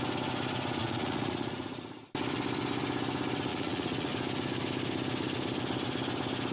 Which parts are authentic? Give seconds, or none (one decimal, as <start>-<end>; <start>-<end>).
0.0-0.8; 2.1-3.5; 4.1-6.5